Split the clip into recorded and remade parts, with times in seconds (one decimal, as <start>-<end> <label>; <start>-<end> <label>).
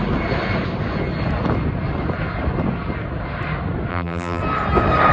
0.0-3.9 recorded; 3.9-4.4 remade; 4.4-5.1 recorded